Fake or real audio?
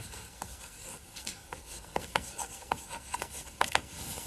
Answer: fake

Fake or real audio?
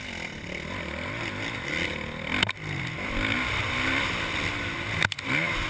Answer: real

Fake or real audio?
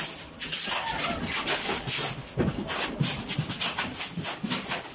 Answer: real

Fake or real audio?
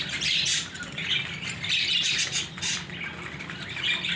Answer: real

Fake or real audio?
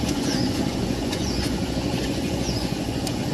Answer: fake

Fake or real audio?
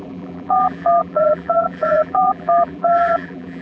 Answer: fake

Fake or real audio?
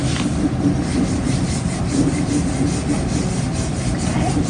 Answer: real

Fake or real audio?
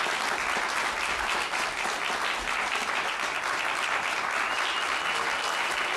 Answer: real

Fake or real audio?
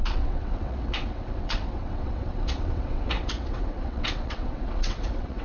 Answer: fake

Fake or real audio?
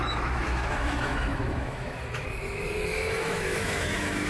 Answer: fake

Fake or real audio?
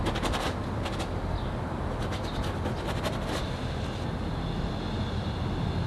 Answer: real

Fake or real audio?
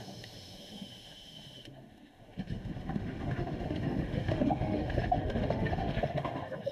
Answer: fake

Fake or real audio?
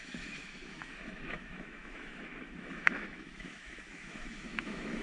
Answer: fake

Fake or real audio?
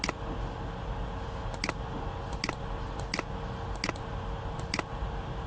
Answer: real